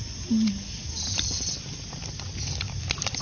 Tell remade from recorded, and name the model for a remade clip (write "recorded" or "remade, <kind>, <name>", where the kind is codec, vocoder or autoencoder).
recorded